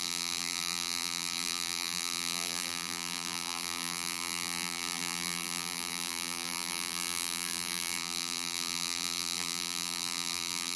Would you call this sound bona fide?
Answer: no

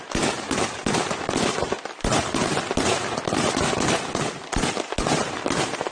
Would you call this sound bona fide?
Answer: yes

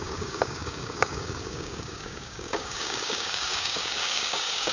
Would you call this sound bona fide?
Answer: no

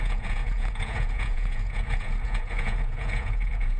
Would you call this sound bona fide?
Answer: no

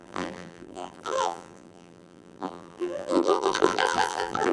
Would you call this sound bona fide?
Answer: no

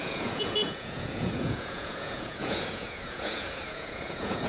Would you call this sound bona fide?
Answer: no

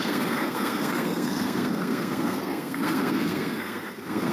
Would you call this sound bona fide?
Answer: no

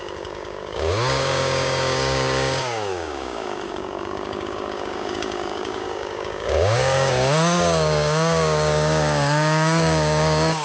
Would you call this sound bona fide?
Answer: no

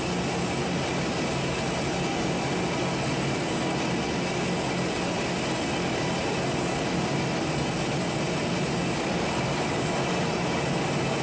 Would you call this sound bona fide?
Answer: yes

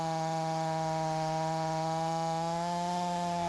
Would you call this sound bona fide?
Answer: no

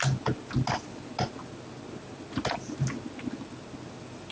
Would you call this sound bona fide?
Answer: yes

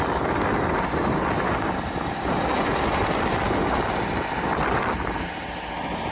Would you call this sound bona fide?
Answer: yes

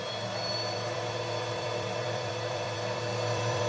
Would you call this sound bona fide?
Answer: no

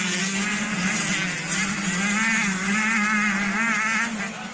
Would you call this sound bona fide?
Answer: yes